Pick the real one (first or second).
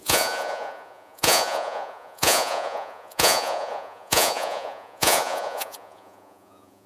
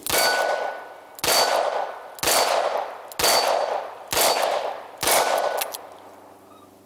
second